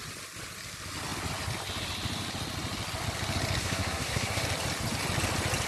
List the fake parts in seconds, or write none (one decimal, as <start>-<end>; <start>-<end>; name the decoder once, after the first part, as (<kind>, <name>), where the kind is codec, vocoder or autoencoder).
3.6-4.4 (codec, SNAC)